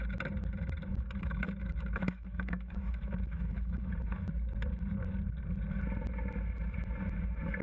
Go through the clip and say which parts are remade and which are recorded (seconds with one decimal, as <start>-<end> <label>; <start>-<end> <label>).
0.0-0.9 recorded; 0.9-3.9 remade; 3.9-7.6 recorded

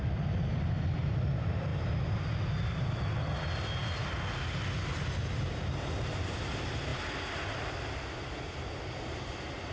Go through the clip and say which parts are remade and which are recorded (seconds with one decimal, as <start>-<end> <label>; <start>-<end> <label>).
0.0-9.7 recorded

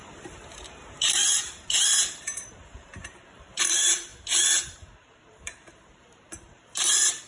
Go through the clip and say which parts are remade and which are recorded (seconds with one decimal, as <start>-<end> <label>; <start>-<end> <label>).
0.0-7.3 remade

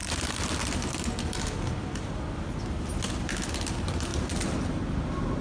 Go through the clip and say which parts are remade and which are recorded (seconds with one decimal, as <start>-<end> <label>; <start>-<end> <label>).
0.0-5.4 recorded